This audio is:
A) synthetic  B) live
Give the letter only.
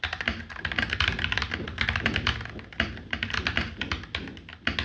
B